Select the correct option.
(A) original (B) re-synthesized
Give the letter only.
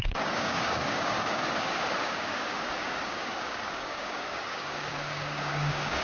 B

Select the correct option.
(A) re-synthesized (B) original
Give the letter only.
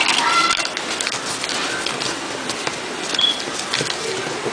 B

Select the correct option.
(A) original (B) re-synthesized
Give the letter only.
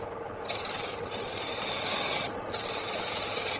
A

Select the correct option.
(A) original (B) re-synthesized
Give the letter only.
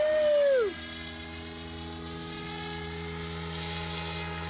A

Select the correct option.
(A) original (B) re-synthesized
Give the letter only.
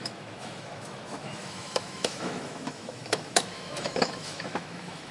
B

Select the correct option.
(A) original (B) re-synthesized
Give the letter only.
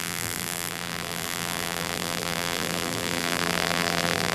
B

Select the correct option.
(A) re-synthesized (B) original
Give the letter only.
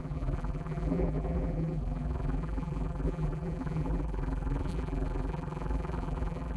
A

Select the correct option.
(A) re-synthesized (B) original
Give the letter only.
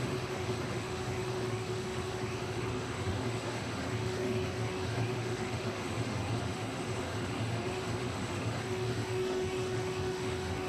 A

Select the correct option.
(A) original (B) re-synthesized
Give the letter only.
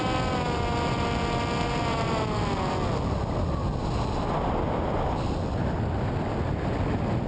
A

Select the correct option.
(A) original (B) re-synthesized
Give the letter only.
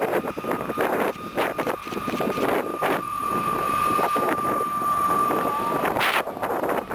B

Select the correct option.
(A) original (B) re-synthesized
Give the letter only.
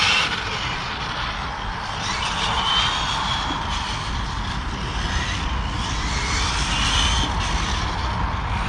A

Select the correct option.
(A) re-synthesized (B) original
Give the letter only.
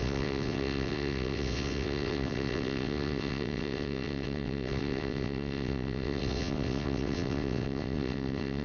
A